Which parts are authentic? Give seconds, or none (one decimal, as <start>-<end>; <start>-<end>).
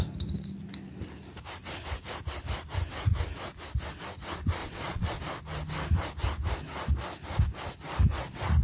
0.0-4.6; 5.2-8.6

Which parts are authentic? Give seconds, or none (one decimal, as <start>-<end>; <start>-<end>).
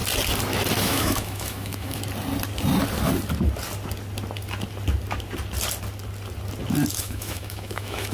0.0-0.8; 2.0-6.9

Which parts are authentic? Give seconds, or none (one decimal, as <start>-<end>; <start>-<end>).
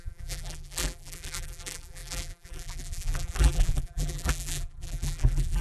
none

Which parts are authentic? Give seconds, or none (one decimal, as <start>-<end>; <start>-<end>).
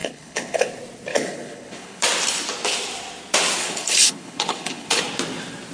0.7-1.1; 2.0-3.6; 5.0-5.7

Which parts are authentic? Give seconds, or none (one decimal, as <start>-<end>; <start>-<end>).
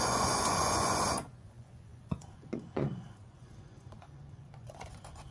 none